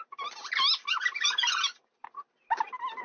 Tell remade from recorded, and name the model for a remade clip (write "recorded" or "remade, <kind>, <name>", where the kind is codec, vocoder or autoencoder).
recorded